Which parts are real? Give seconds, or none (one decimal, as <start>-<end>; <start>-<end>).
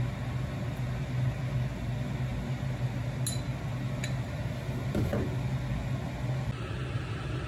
0.0-7.5